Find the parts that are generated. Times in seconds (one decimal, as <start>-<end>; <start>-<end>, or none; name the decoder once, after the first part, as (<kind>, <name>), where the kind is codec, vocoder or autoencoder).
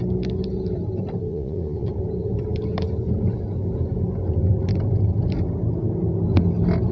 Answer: 1.3-1.9 (vocoder, Vocos)